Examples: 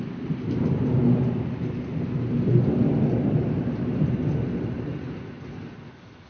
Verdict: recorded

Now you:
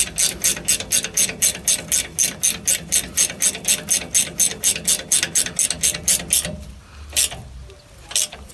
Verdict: recorded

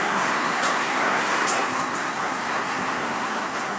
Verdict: remade